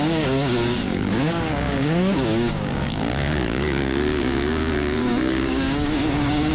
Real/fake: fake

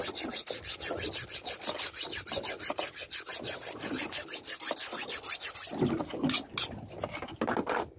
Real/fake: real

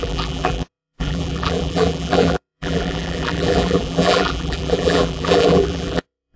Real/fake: fake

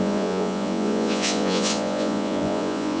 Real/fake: fake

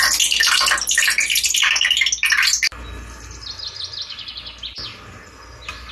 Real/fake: real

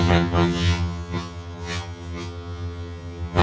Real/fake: fake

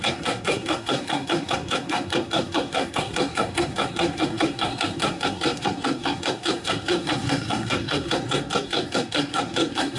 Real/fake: fake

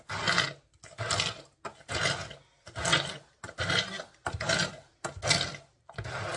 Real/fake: real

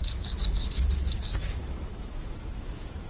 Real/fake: fake